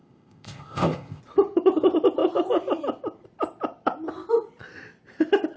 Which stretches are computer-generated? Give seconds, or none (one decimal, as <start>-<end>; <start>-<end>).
0.0-1.2